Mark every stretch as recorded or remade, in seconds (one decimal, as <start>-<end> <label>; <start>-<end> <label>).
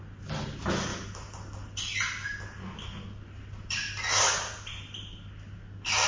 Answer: 0.0-6.1 recorded